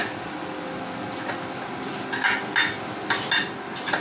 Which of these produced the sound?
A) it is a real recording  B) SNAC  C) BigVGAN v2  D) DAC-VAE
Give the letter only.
A